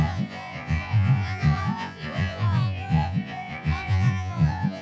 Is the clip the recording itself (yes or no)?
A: no